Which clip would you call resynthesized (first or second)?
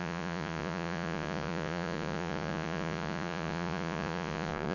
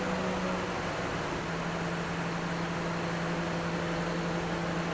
first